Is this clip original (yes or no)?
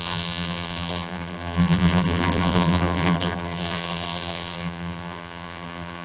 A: no